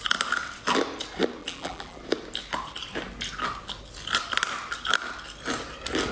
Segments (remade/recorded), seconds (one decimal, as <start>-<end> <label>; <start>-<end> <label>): 0.0-1.4 recorded; 1.4-2.0 remade; 2.0-6.1 recorded